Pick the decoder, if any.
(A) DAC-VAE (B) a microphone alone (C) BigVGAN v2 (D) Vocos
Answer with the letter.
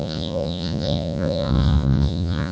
D